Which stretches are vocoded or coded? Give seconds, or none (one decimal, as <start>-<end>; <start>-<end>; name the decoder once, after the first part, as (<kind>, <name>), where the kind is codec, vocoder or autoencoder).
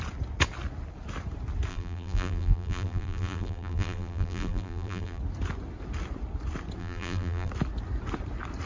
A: 1.7-5.2 (vocoder, BigVGAN v2); 6.8-7.5